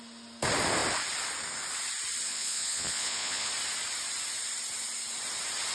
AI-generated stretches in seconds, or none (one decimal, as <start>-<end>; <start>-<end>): 2.3-3.5